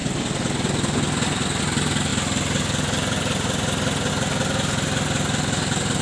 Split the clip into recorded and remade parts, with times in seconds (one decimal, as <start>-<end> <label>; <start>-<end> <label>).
0.0-6.0 recorded